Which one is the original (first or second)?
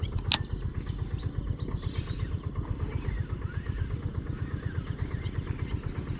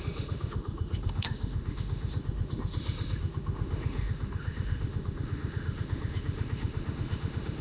first